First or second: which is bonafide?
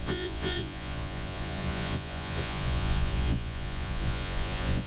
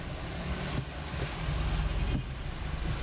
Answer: second